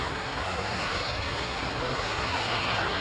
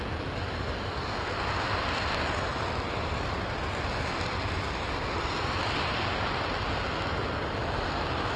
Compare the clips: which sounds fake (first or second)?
first